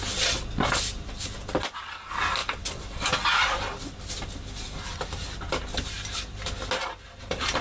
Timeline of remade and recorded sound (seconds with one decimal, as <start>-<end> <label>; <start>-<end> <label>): 0.0-7.6 recorded